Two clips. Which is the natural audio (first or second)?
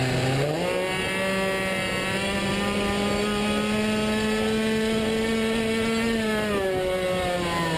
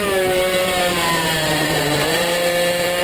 first